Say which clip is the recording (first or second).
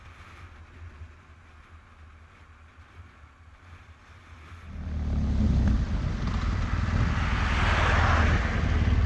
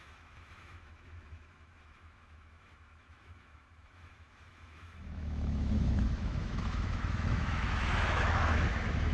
first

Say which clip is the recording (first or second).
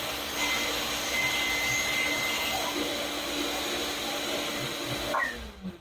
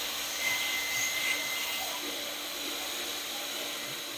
first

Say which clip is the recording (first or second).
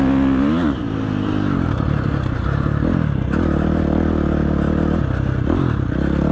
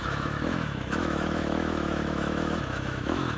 first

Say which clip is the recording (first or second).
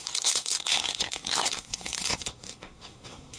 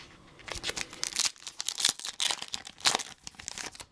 second